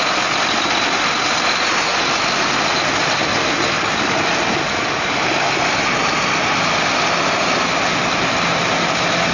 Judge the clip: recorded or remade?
recorded